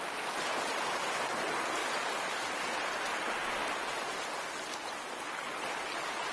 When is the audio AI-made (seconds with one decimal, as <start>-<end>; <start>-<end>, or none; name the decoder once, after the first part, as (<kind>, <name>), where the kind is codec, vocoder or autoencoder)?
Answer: none